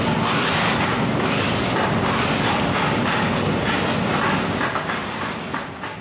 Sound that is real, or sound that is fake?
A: real